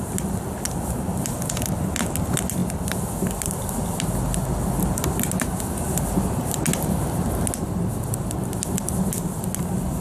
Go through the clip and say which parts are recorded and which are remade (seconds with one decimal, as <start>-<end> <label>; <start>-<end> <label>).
0.0-10.0 recorded